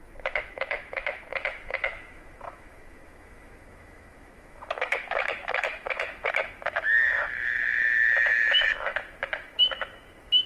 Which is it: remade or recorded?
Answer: remade